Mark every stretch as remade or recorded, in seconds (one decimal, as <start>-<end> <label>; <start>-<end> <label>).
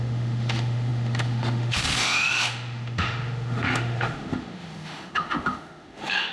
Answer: 0.0-6.3 remade